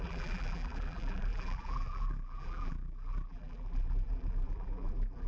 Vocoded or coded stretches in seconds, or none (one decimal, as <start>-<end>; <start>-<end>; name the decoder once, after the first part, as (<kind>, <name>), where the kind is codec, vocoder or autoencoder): 0.0-5.3 (vocoder, BigVGAN v2)